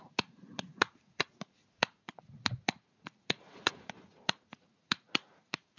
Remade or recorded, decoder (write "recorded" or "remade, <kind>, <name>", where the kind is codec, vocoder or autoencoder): remade, vocoder, Vocos